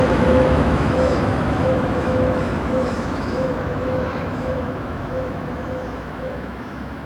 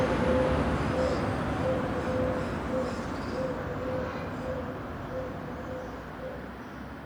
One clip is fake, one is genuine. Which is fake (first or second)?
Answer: first